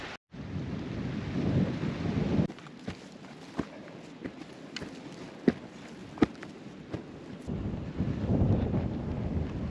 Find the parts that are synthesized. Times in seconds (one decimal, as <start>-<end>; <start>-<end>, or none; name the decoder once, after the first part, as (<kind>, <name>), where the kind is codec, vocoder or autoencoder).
none